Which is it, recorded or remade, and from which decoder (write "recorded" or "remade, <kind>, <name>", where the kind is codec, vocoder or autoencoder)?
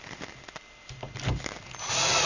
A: recorded